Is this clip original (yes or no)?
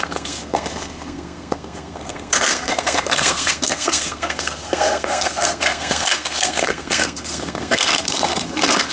no